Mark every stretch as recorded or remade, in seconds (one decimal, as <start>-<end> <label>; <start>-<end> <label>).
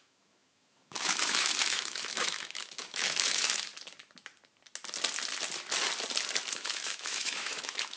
0.0-3.7 remade; 3.7-6.5 recorded; 6.5-8.0 remade